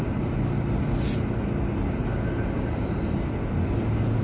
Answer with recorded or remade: recorded